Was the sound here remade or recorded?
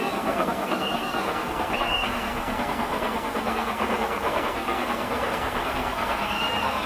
remade